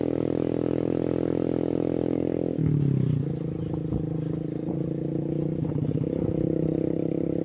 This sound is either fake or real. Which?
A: real